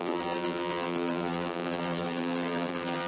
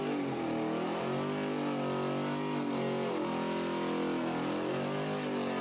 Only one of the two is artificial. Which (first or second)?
first